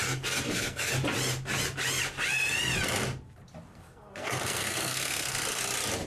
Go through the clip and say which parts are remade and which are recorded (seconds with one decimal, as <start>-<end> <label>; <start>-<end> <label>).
0.0-0.9 remade; 0.9-3.7 recorded; 3.7-5.6 remade; 5.6-6.1 recorded